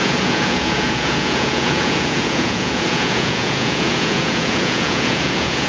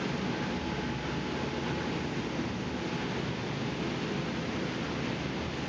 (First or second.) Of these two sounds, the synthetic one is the first